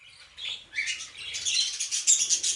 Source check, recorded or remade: recorded